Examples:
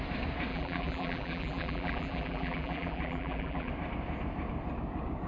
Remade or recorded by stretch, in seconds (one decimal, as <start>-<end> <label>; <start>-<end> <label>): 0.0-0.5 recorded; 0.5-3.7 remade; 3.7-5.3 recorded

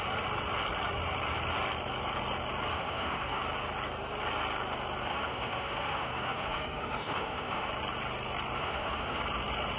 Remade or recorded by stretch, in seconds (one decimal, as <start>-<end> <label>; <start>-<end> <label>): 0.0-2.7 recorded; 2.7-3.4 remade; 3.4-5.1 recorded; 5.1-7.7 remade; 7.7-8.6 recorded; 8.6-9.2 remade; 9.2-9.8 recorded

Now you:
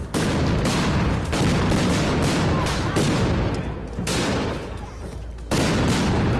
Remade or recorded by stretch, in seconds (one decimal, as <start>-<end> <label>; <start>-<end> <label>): 0.0-6.4 recorded